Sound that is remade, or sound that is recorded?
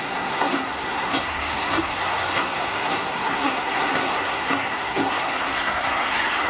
remade